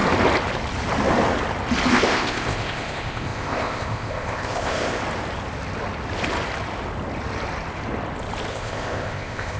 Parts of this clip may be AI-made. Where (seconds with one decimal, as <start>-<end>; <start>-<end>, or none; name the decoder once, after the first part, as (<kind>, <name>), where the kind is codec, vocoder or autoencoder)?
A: 1.9-5.0 (codec, ZipCodec); 8.5-9.6